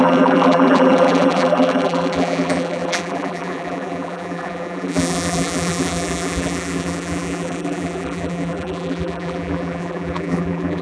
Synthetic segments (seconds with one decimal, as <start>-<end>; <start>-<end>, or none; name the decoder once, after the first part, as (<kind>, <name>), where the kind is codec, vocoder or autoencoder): 0.0-10.8 (vocoder, BigVGAN v2)